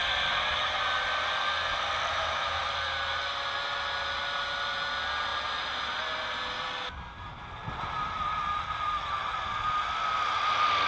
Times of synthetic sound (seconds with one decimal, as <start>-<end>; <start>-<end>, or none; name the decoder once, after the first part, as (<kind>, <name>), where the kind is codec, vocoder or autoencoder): 2.1-2.6 (autoencoder, DAC-VAE)